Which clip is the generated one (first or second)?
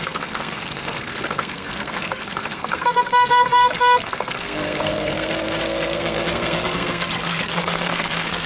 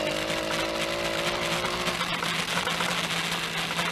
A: first